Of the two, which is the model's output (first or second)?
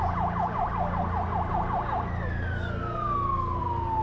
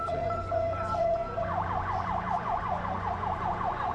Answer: second